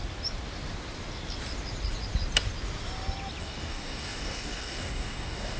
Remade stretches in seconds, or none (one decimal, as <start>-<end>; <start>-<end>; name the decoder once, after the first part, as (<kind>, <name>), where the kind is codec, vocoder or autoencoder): 3.4-5.6 (codec, DAC)